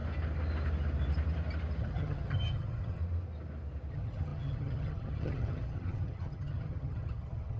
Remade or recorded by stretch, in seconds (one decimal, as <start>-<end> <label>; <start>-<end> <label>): 0.0-1.8 recorded; 1.8-3.0 remade; 3.0-3.9 recorded; 3.9-7.6 remade